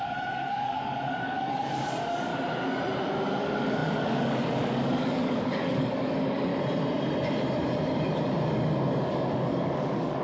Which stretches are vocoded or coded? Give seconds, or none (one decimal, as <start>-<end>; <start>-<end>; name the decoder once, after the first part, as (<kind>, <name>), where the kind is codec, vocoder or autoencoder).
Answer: 0.0-2.3 (codec, DAC); 3.4-6.5; 9.0-10.2

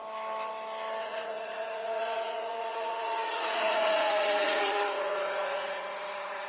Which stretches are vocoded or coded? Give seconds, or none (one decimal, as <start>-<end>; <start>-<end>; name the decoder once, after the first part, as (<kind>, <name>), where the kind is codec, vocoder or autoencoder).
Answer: 1.0-6.5 (vocoder, Vocos)